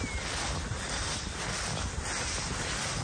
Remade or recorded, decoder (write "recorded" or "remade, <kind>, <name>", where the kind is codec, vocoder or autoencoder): recorded